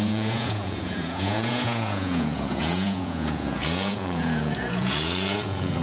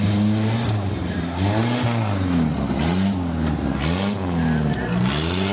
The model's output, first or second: first